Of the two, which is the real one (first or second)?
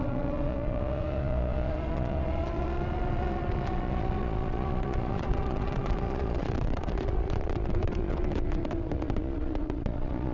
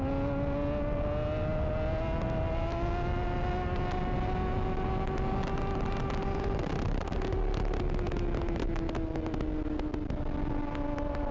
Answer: second